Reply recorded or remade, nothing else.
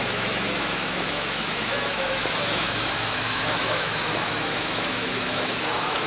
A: remade